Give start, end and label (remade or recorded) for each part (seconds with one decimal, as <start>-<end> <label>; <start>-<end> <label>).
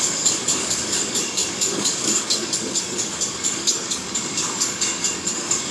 0.0-5.7 remade